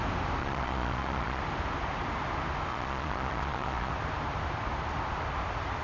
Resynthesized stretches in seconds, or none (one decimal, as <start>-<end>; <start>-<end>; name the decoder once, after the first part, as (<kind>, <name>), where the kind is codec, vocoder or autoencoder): 0.4-1.4 (vocoder, Vocos); 2.7-3.9